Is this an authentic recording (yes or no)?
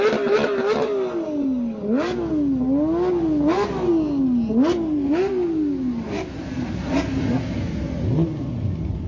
yes